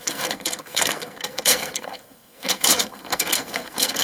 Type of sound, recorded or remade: remade